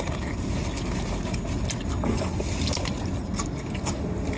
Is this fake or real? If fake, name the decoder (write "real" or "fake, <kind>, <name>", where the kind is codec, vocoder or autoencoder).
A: real